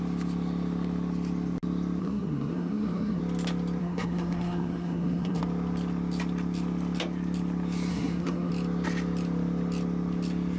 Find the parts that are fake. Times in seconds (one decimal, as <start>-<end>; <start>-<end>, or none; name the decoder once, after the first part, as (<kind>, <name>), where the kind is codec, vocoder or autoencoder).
2.0-3.2 (codec, SNAC); 3.8-5.4; 7.9-8.5